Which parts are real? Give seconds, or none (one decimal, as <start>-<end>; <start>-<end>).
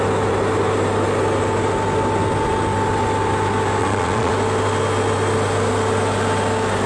0.0-3.8; 4.3-6.9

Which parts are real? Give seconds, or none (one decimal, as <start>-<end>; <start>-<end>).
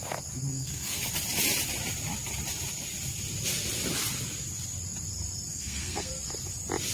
0.0-0.5; 1.0-5.5; 6.1-6.9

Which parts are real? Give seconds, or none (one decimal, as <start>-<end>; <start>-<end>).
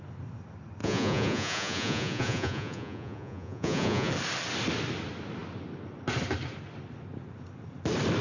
0.0-0.8; 4.1-8.2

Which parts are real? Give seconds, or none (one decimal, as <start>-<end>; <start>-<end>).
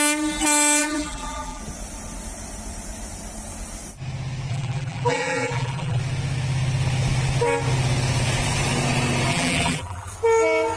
0.0-0.8; 1.6-4.5; 6.0-9.3; 10.1-10.8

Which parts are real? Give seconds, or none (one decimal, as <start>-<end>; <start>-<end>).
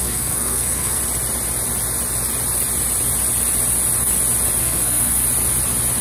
1.0-4.6; 5.2-6.0